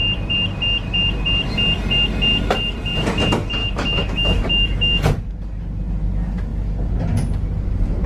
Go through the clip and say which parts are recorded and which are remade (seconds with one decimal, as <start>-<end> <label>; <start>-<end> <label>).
0.0-3.6 recorded; 3.6-5.0 remade; 5.0-8.1 recorded